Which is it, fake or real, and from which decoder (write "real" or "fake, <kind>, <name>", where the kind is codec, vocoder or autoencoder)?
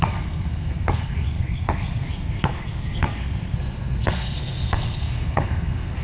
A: fake, codec, SNAC